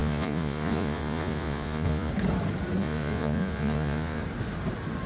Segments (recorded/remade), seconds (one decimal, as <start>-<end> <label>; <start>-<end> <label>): 0.0-2.1 remade; 2.1-2.8 recorded; 2.8-4.2 remade; 4.2-5.1 recorded